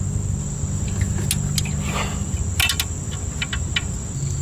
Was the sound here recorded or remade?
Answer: recorded